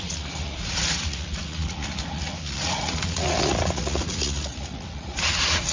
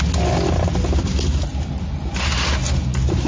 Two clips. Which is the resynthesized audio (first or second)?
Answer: first